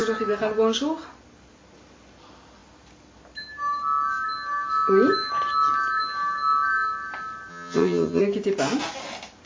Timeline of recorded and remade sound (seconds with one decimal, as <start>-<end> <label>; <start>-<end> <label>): 0.0-7.5 recorded; 7.5-8.2 remade; 8.2-9.5 recorded

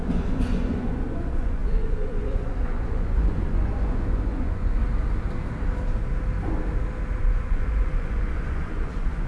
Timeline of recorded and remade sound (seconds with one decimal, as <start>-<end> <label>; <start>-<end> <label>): 0.0-4.8 remade; 4.8-7.2 recorded; 7.2-9.3 remade

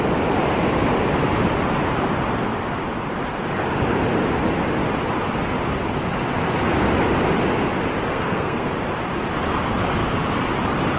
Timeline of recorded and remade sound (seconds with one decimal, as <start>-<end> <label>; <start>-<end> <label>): 0.0-8.1 recorded; 8.1-8.7 remade; 8.7-11.0 recorded